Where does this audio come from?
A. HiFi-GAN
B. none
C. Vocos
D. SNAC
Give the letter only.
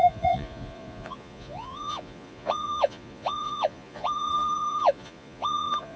C